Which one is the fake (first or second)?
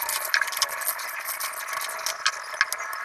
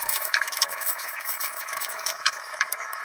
second